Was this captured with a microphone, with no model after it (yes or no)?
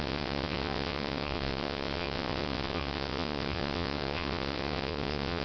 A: no